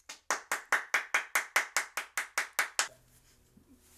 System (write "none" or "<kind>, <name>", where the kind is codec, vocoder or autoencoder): none